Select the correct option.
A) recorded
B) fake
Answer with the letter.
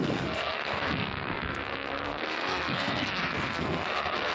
B